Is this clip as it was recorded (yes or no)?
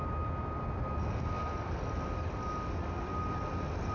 yes